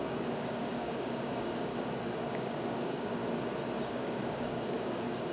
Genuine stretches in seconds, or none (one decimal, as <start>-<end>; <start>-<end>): 1.7-2.3; 3.2-3.8